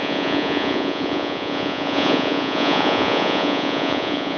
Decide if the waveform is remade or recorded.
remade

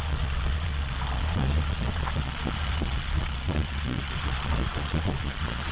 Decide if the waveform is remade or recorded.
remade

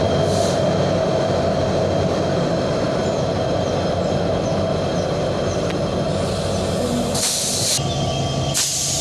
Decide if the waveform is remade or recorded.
recorded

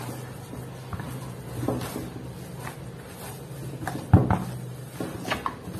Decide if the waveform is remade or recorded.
recorded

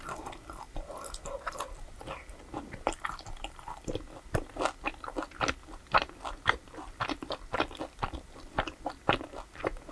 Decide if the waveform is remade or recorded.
recorded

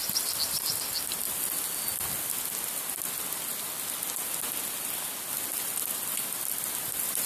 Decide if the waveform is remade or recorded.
recorded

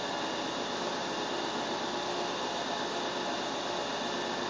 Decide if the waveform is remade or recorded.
recorded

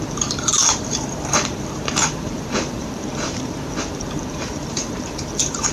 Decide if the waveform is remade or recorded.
remade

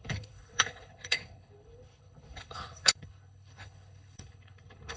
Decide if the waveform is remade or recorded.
remade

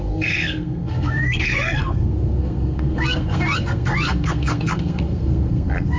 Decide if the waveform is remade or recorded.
remade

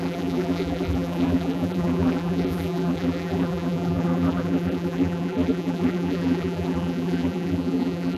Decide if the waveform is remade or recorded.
remade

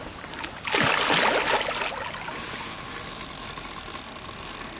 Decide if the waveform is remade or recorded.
recorded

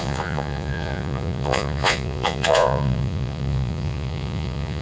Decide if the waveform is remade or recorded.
remade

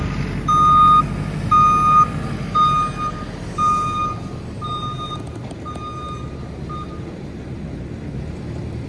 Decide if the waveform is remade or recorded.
recorded